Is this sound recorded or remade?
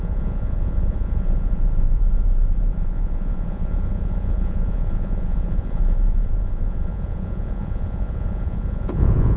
remade